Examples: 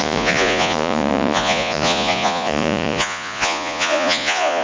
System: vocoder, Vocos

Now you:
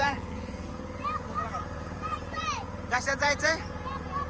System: vocoder, Vocos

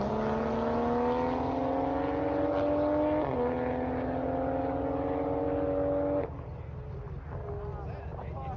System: none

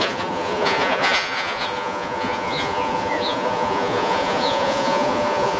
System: vocoder, Vocos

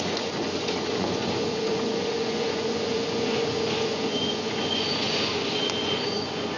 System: vocoder, Vocos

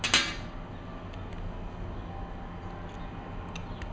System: none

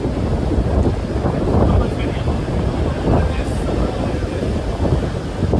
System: none